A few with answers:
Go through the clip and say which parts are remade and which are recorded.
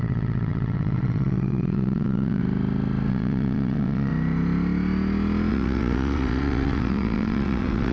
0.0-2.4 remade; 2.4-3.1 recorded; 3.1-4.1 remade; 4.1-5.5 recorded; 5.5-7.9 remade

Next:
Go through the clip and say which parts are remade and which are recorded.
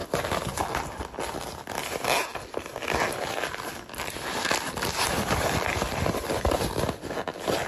0.0-2.7 recorded; 2.7-6.8 remade; 6.8-7.7 recorded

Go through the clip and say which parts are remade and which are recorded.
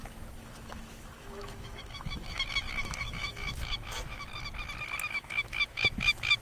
0.0-4.3 remade; 4.3-5.1 recorded; 5.1-6.4 remade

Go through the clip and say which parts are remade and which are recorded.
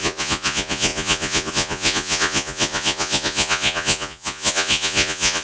0.0-5.4 remade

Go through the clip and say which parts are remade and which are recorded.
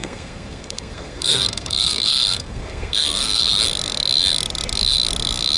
0.0-3.4 remade; 3.4-5.6 recorded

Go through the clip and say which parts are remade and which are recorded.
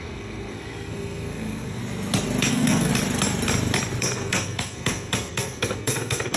0.0-1.8 remade; 1.8-2.5 recorded; 2.5-2.9 remade; 2.9-4.0 recorded; 4.0-6.4 remade